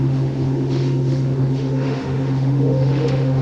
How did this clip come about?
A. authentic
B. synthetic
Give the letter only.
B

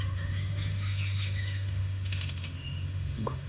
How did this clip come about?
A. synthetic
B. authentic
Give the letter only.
A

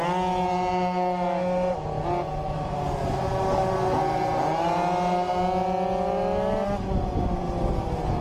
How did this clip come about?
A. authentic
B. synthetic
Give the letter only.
A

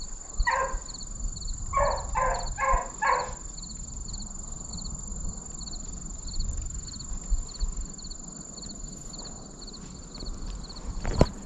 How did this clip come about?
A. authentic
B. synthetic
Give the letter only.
A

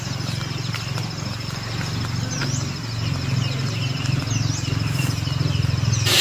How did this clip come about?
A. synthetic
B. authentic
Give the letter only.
B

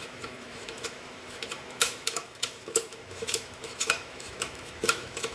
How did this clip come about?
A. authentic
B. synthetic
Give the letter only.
B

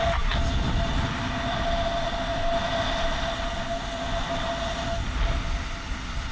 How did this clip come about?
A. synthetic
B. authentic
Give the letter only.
B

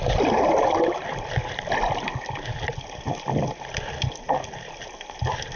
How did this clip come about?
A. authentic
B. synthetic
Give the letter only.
A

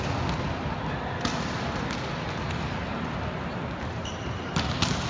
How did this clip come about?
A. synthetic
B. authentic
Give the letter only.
B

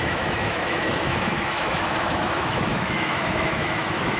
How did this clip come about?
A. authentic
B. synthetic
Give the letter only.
B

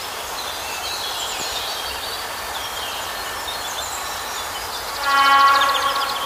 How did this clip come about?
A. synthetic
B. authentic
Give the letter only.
B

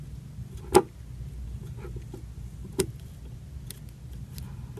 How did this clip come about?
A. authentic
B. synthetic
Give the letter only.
A